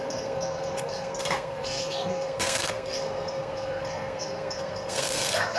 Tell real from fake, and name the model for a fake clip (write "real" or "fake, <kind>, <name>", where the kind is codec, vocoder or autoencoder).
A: fake, codec, SNAC